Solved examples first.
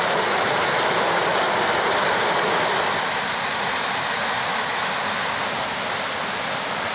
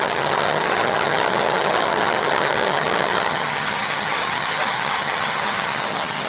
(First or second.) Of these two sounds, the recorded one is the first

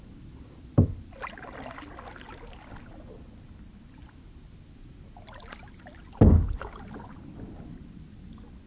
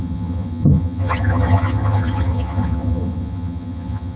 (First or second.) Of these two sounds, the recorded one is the first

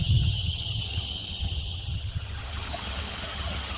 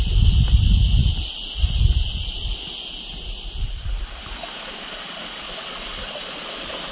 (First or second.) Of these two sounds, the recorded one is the second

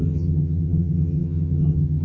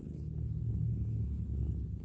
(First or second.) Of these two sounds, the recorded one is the second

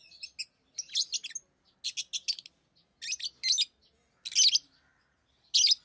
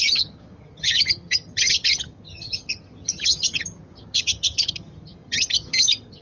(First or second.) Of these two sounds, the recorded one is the first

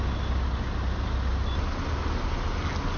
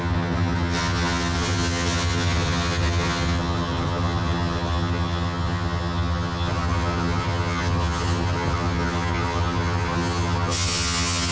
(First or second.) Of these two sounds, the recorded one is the first